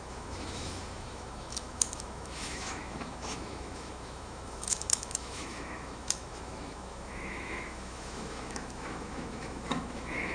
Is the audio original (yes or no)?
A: no